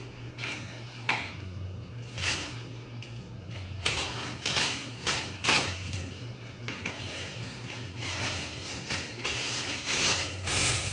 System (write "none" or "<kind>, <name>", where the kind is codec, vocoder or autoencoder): codec, SNAC